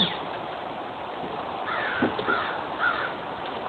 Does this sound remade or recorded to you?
recorded